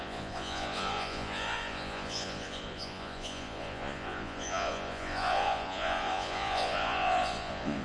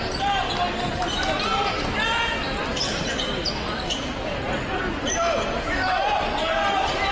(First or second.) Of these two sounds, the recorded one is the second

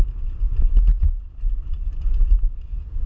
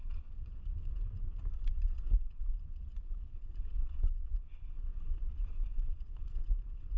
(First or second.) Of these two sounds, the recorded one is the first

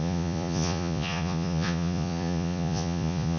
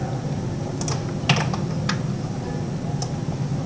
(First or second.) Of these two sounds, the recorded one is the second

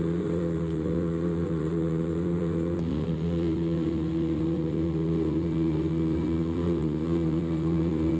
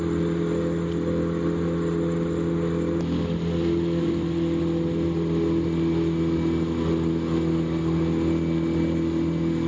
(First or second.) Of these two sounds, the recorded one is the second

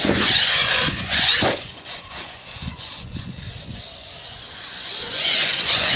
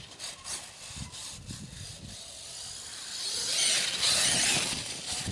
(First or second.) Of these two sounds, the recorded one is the second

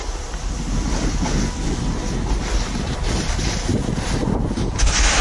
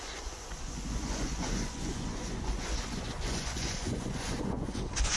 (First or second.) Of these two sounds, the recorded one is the first